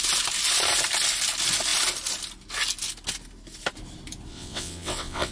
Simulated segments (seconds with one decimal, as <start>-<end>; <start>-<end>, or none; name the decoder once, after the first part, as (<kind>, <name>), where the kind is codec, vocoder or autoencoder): 4.3-5.3 (vocoder, WaveNeXt)